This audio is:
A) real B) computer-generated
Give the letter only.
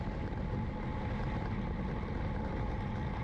A